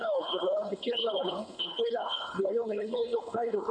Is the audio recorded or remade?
remade